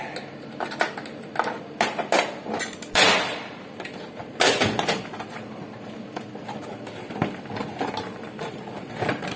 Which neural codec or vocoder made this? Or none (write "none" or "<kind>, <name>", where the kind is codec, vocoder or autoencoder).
none